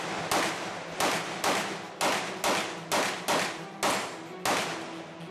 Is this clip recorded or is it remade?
recorded